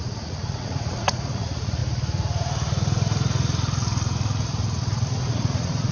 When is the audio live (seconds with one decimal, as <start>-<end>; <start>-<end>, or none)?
1.8-5.3